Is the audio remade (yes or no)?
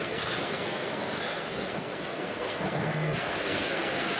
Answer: yes